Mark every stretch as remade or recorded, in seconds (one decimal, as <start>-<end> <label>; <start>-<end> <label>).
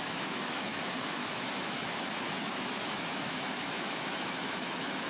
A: 0.0-5.1 remade